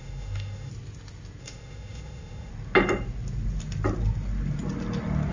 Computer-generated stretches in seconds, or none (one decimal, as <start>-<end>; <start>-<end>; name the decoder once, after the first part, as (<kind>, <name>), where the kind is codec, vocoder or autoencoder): 0.0-0.7 (autoencoder, DAC-VAE); 1.4-2.5